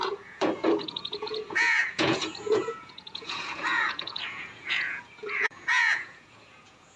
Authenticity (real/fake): fake